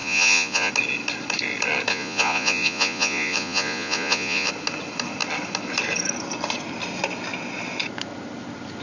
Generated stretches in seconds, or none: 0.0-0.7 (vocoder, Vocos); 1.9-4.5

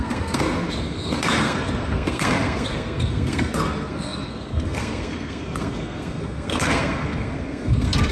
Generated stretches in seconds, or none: 0.0-8.1 (codec, SNAC)

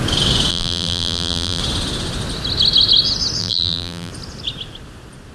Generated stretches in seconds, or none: 0.5-1.6 (vocoder, BigVGAN v2); 3.4-4.1